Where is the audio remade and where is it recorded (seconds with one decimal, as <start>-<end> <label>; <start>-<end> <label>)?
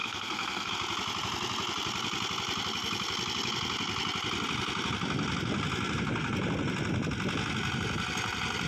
0.0-0.7 remade; 0.7-8.7 recorded